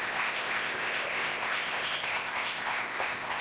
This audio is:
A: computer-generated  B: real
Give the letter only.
A